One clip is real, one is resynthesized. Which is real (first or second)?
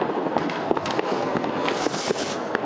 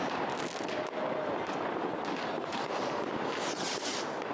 second